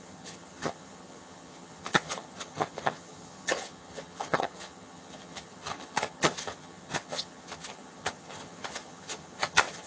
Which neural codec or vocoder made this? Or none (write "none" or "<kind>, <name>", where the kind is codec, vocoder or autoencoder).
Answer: vocoder, HiFi-GAN